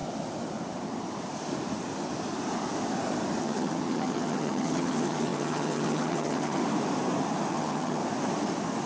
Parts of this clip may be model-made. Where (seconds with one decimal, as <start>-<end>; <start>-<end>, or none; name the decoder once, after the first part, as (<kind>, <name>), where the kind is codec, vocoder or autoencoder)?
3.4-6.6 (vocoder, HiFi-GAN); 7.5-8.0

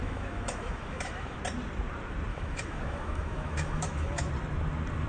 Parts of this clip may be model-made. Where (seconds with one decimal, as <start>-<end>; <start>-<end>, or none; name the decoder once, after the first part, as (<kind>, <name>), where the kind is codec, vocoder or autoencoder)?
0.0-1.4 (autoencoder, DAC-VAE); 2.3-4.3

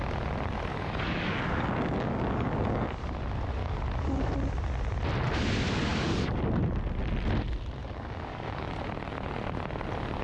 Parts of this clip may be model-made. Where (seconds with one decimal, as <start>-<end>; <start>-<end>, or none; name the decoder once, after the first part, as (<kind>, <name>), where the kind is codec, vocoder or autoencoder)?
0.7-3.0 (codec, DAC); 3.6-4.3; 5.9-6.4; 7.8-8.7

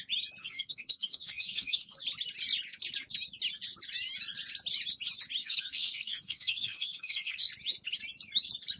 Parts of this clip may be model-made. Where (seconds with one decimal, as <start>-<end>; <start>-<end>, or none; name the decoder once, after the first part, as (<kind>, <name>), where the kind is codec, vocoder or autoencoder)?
0.4-2.0 (codec, SNAC); 5.4-7.5

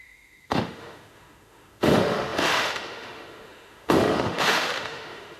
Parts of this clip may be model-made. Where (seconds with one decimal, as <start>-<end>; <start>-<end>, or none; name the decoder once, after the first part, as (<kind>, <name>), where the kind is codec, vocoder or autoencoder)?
0.0-5.4 (autoencoder, DAC-VAE)

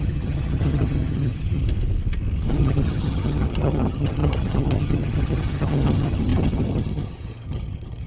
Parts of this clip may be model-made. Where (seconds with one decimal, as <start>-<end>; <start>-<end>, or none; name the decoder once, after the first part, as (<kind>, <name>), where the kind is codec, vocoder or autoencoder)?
0.0-1.6 (vocoder, HiFi-GAN); 2.5-8.1

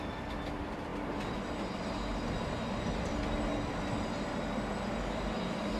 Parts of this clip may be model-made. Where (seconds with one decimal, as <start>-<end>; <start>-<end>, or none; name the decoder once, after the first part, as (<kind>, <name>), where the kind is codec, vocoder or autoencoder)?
none

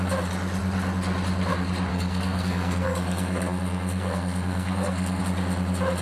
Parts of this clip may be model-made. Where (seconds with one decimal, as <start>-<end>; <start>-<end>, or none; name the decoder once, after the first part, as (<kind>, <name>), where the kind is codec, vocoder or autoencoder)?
1.9-5.2 (codec, SNAC)